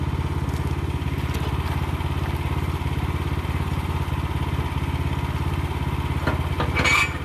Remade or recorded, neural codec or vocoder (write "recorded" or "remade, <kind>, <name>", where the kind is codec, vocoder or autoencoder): recorded